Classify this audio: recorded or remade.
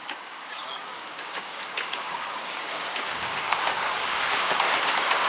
remade